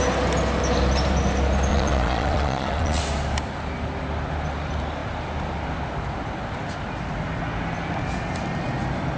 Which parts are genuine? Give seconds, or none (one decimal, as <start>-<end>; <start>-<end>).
0.0-1.7; 3.0-9.2